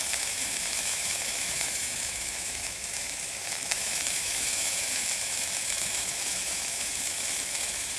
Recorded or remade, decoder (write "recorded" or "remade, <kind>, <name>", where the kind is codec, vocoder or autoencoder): remade, autoencoder, DAC-VAE